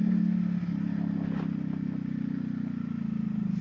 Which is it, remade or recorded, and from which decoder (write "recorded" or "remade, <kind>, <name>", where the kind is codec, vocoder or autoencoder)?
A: recorded